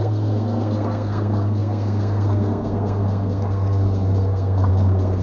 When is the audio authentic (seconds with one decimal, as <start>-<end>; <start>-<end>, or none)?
none